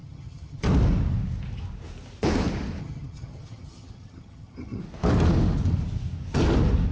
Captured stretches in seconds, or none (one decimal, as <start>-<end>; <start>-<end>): 0.6-2.8; 4.8-6.9